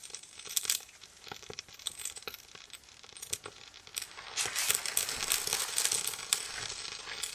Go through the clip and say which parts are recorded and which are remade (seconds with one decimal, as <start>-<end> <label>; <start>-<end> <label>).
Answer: 0.0-3.2 remade; 3.2-7.3 recorded